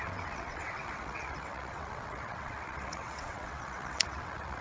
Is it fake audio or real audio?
fake